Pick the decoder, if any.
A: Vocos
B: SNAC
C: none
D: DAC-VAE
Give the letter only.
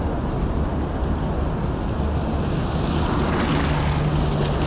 C